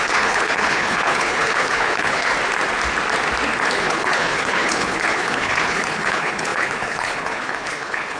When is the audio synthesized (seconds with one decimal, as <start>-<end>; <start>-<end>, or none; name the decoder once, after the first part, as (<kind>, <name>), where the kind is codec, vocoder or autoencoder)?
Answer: 0.0-2.3 (codec, HILCodec); 3.8-8.2